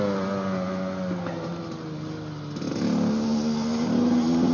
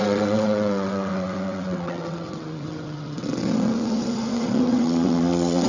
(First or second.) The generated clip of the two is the second